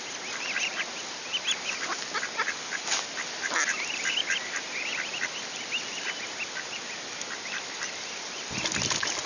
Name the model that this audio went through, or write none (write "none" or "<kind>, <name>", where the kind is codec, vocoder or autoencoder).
none